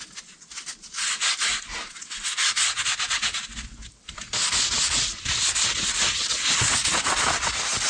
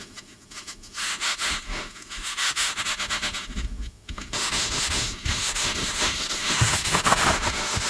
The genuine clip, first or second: first